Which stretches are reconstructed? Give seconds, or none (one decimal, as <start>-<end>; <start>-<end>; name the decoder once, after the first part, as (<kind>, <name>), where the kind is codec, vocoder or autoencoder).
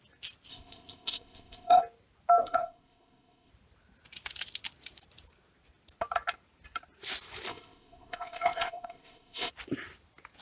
0.5-1.8 (codec, ZipCodec); 2.4-3.5; 7.5-9.5